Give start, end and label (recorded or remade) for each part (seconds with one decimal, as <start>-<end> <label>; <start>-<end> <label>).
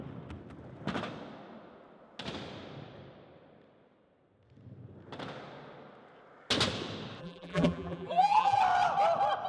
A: 0.0-7.2 recorded; 7.2-8.6 remade; 8.6-9.5 recorded